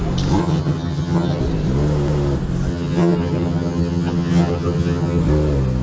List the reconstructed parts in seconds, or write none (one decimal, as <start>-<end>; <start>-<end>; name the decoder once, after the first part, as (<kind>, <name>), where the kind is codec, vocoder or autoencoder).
0.4-1.4 (vocoder, HiFi-GAN); 2.7-5.2